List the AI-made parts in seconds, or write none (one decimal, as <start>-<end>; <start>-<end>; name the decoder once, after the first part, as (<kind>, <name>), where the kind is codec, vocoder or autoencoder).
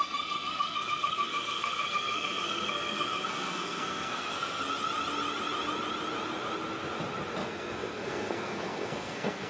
0.0-4.6 (codec, SNAC); 7.4-9.5